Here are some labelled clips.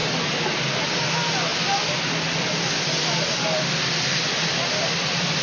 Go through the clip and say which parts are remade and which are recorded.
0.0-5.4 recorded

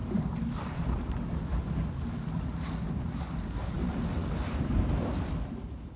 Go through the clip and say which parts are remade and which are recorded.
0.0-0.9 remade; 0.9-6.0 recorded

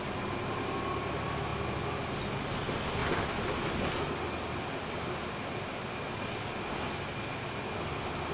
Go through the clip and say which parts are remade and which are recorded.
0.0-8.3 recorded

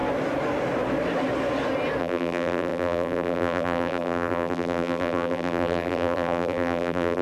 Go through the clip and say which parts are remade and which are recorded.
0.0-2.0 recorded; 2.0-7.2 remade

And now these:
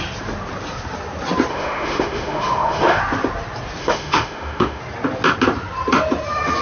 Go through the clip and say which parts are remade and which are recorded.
0.0-1.5 recorded; 1.5-3.0 remade; 3.0-3.8 recorded; 3.8-4.8 remade; 4.8-6.6 recorded

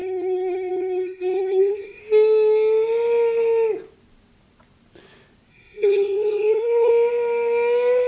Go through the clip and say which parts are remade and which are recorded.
0.0-2.0 remade; 2.0-5.5 recorded; 5.5-6.9 remade; 6.9-8.1 recorded

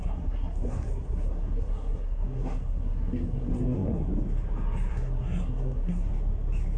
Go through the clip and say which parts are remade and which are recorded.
0.0-4.1 remade; 4.1-4.9 recorded; 4.9-6.1 remade; 6.1-6.8 recorded